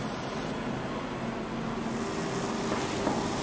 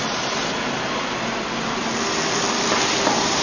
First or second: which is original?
first